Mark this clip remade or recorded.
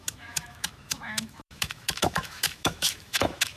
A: remade